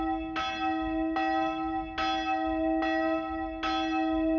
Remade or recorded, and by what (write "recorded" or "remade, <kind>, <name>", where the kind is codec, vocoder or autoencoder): recorded